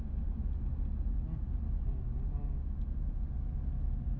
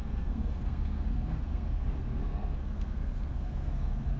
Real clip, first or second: first